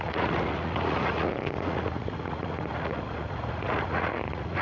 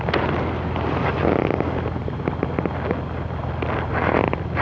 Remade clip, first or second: first